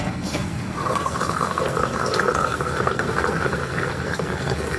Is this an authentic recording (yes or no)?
no